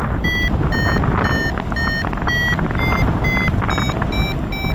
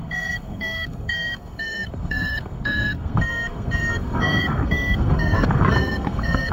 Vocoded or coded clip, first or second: second